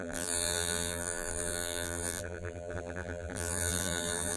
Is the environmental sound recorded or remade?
remade